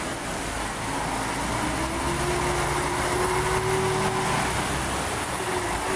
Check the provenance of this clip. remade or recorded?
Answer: recorded